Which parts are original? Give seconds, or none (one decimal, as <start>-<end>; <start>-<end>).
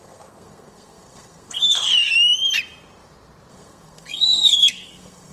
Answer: 1.9-3.5